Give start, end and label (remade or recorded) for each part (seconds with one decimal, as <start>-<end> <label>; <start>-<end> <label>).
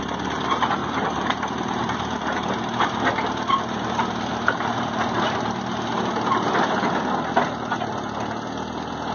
0.0-0.8 recorded; 0.8-6.0 remade; 6.0-9.1 recorded